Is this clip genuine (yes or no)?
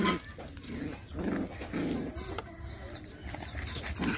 yes